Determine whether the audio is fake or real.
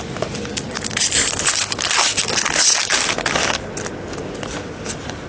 real